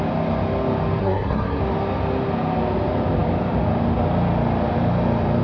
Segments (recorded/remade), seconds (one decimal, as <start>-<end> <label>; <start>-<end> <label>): 0.0-1.0 recorded; 1.0-1.6 remade; 1.6-5.4 recorded